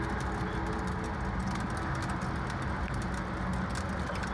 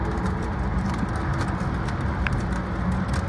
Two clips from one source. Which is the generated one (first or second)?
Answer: second